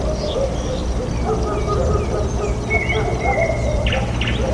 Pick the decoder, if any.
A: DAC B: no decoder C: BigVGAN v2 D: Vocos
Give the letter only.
B